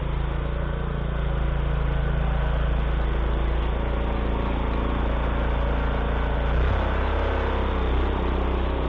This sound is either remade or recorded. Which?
recorded